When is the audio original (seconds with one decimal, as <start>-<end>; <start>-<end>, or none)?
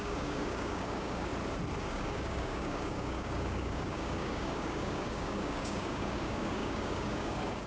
1.3-1.8